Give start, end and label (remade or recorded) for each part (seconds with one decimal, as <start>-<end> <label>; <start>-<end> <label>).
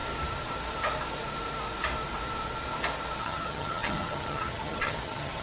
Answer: 0.0-3.2 recorded; 3.2-5.4 remade